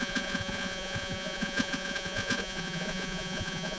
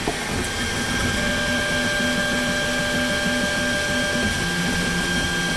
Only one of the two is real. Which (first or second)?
second